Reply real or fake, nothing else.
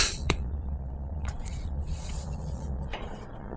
fake